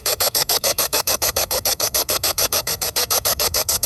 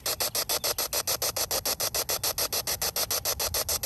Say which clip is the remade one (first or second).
first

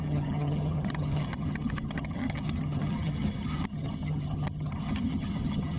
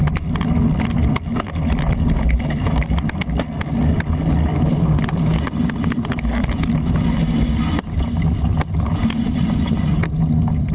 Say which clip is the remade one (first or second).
first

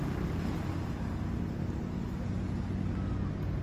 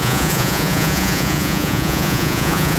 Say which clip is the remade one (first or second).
second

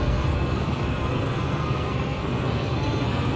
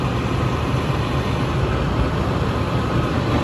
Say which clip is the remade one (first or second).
first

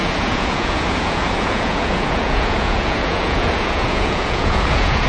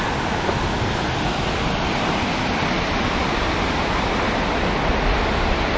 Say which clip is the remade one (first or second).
first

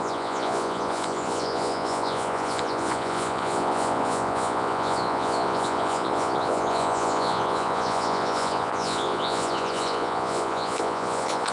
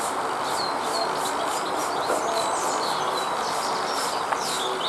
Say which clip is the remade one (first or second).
first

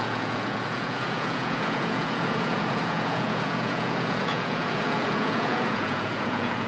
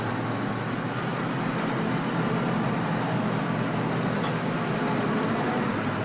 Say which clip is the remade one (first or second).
first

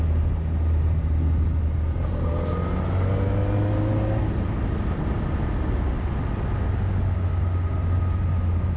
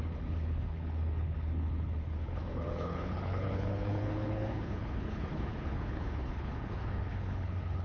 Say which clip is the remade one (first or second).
second